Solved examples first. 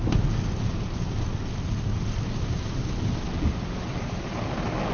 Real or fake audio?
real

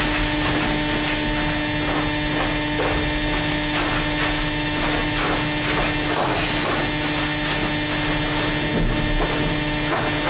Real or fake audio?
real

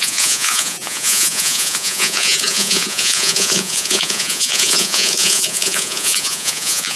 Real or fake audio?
fake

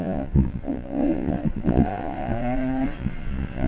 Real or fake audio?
fake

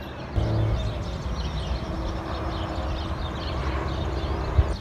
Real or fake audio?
real